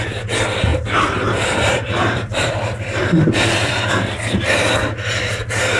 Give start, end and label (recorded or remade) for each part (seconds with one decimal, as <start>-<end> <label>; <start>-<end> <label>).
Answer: 0.0-0.7 recorded; 0.7-4.2 remade; 4.2-5.8 recorded